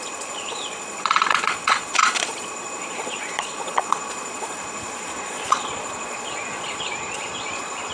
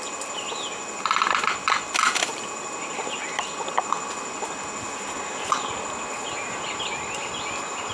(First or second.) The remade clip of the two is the first